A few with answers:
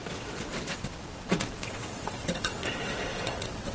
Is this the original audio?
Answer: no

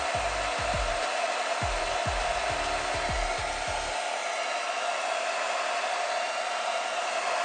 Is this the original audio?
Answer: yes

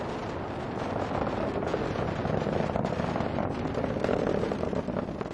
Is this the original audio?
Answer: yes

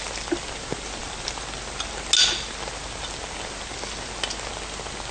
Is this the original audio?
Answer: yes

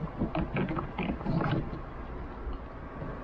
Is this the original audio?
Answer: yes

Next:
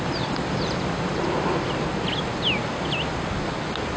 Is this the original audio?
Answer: yes